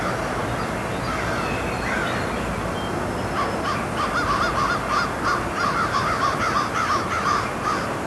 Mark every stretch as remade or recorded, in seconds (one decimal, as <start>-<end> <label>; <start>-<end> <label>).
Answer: 0.0-8.1 recorded